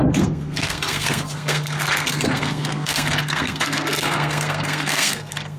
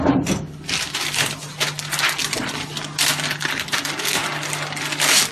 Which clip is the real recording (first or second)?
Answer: second